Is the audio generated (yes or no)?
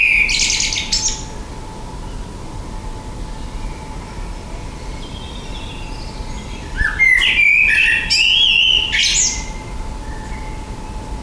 no